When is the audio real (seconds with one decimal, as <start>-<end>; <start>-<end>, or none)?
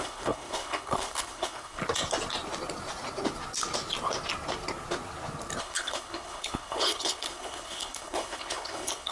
1.8-5.6